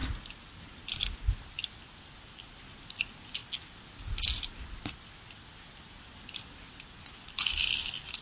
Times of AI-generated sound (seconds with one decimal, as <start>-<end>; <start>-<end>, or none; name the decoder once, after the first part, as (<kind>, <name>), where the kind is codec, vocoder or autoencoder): none